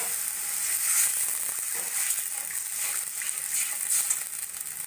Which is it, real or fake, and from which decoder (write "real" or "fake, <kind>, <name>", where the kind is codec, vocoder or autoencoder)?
real